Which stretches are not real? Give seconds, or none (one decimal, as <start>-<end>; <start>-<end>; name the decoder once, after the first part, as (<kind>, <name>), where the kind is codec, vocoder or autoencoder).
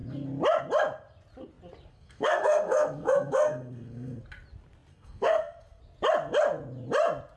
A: 1.9-4.2 (codec, SNAC); 4.9-5.8